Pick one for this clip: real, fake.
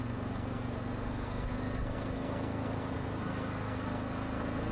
fake